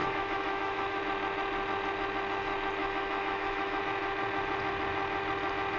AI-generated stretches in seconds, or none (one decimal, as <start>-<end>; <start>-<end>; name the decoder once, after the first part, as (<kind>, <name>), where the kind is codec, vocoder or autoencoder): 0.0-1.0 (autoencoder, DAC-VAE); 2.8-3.8